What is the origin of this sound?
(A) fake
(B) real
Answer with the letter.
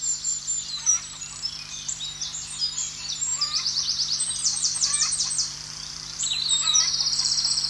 A